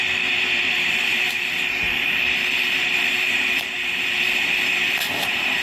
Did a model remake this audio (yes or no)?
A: yes